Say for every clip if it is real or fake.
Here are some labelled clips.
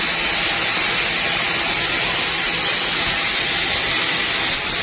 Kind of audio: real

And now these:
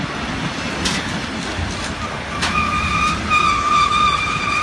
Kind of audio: real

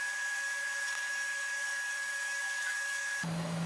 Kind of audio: fake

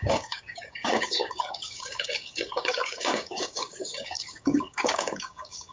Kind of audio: fake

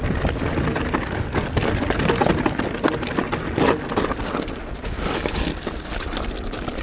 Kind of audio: real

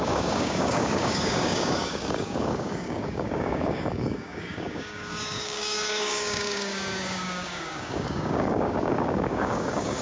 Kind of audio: fake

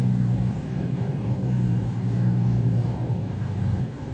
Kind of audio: fake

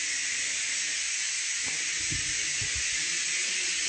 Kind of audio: real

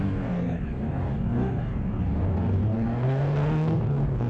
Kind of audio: fake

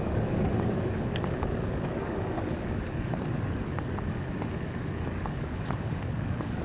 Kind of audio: fake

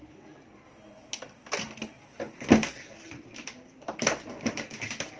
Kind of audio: real